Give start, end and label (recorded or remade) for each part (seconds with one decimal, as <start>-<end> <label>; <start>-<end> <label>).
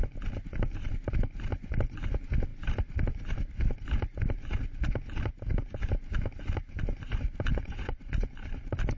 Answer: 0.0-7.5 recorded; 7.5-8.3 remade; 8.3-9.0 recorded